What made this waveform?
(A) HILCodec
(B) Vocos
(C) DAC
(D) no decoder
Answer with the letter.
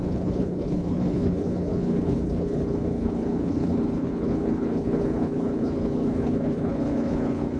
A